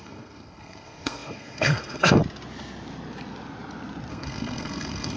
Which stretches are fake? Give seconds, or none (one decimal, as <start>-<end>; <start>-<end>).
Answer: 0.0-2.2; 4.1-5.2